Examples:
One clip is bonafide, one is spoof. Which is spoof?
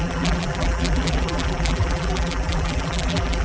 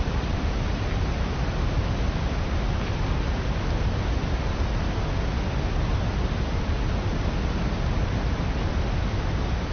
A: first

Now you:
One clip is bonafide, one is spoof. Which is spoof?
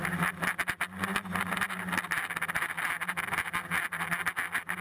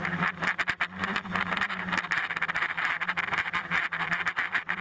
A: second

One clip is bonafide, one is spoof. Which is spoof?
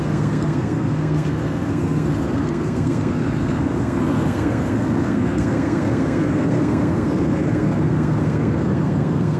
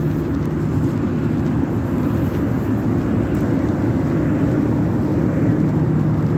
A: first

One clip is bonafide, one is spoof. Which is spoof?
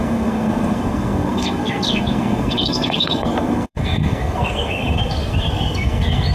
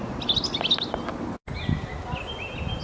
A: first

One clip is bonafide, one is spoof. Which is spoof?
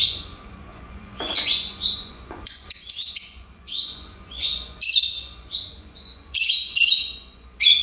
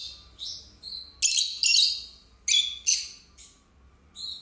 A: first